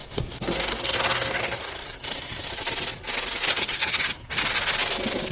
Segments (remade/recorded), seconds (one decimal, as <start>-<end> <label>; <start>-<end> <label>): 0.0-2.5 remade; 2.5-3.5 recorded; 3.5-4.4 remade; 4.4-5.3 recorded